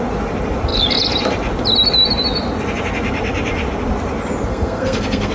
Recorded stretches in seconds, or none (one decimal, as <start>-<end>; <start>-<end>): 0.0-4.5